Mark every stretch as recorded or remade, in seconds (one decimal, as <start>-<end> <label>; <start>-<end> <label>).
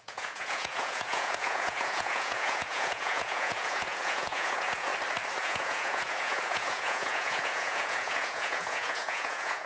0.0-4.9 remade; 4.9-5.4 recorded; 5.4-9.7 remade